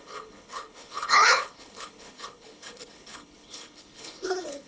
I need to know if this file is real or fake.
fake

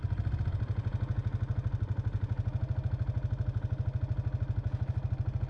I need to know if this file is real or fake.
real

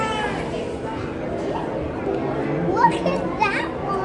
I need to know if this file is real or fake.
real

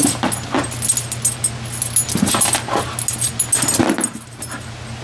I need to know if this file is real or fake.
real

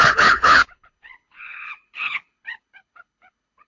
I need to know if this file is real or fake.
fake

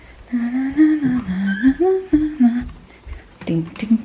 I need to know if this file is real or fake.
real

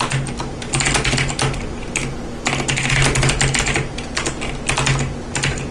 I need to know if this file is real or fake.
real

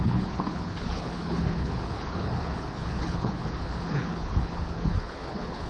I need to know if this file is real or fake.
fake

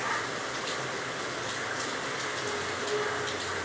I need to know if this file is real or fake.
real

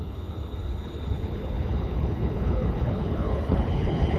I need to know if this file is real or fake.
fake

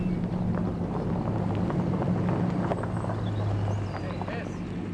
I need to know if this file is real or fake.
real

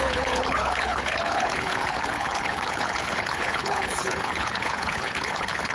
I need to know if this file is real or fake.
fake